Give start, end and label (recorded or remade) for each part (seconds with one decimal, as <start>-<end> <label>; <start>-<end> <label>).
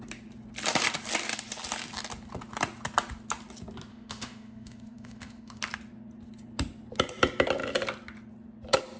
0.0-3.9 recorded; 3.9-5.6 remade; 5.6-9.0 recorded